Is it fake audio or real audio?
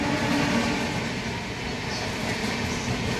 real